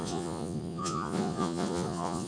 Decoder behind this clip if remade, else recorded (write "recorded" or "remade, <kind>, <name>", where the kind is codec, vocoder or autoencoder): remade, vocoder, Vocos